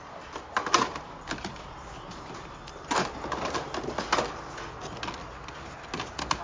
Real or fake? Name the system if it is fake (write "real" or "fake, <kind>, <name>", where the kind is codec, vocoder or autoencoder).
real